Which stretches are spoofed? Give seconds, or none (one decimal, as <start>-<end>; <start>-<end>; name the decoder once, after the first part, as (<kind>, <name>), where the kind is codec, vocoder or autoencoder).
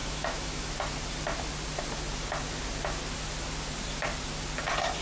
0.0-0.7 (autoencoder, DAC-VAE)